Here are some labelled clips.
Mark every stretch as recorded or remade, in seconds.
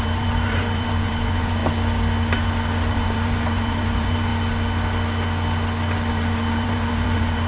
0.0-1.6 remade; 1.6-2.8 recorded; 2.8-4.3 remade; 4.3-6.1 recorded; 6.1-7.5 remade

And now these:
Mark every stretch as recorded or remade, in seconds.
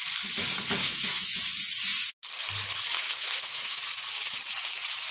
0.0-0.8 recorded; 0.8-1.4 remade; 1.4-2.9 recorded; 2.9-3.8 remade; 3.8-5.1 recorded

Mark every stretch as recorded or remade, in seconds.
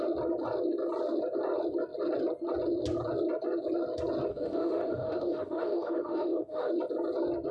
0.0-4.3 recorded; 4.3-6.7 remade; 6.7-7.5 recorded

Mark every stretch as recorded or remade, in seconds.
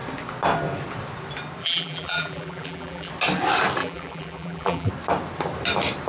0.0-1.6 recorded; 1.6-3.1 remade; 3.1-3.8 recorded; 3.8-4.9 remade; 4.9-6.1 recorded